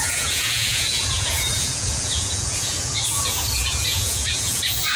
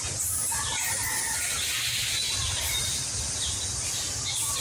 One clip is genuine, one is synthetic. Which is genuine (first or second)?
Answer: second